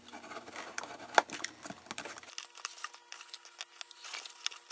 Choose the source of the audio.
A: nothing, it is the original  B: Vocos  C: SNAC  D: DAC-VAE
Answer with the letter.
A